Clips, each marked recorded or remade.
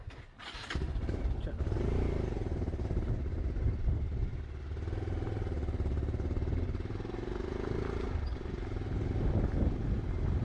recorded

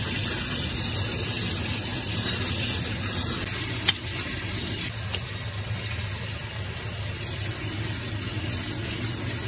recorded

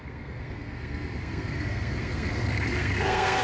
remade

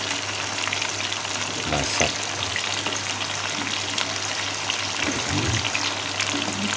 recorded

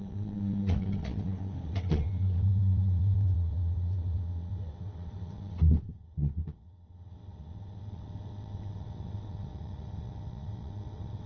remade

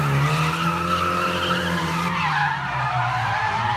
recorded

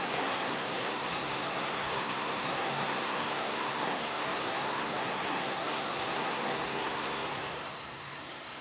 remade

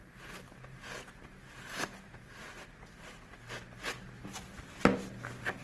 recorded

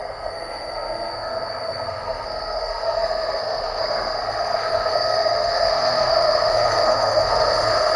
remade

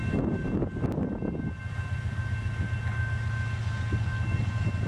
recorded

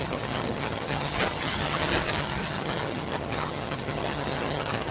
remade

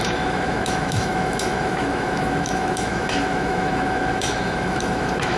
remade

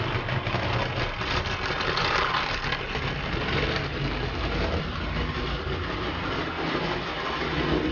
recorded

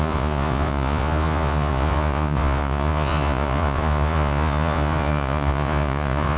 remade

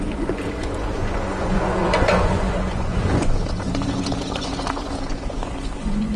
remade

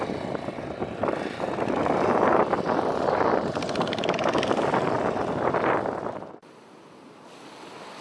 recorded